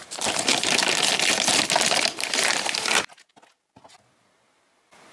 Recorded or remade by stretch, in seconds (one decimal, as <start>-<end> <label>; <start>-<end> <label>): 0.0-5.1 recorded